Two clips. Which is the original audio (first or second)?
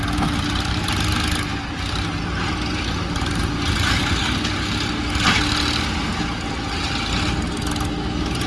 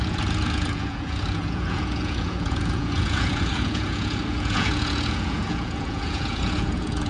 first